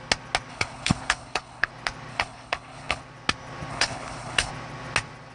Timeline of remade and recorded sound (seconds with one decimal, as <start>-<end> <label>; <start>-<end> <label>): 0.0-0.5 recorded; 0.5-1.7 remade; 1.7-2.1 recorded; 2.1-3.0 remade; 3.0-3.7 recorded; 3.7-4.5 remade; 4.5-5.3 recorded